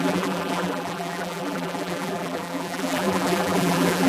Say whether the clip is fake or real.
fake